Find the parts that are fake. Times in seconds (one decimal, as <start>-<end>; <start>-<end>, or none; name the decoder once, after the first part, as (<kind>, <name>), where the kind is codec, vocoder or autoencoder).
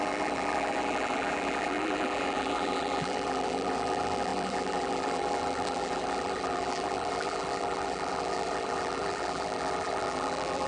0.0-10.7 (vocoder, BigVGAN v2)